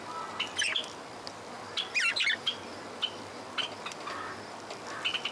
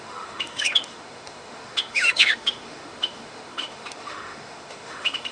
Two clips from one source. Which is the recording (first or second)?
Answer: first